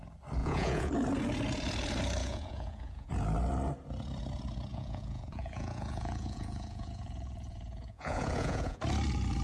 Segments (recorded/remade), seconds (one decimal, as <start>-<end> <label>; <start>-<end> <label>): 0.0-0.4 recorded; 0.4-0.9 remade; 0.9-2.2 recorded; 2.2-3.1 remade; 3.1-4.7 recorded; 4.7-8.8 remade; 8.8-9.4 recorded